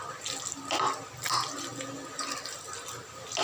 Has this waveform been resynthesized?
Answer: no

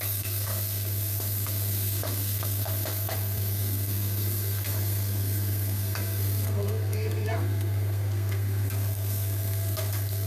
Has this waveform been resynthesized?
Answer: yes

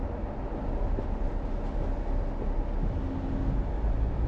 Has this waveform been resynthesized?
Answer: no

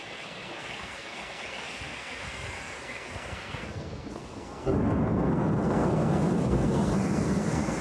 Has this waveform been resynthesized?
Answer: yes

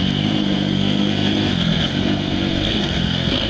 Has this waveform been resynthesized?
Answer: yes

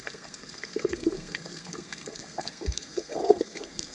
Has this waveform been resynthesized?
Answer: yes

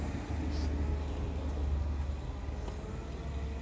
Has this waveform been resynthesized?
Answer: no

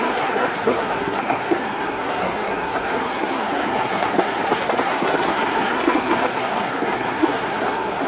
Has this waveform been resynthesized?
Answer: yes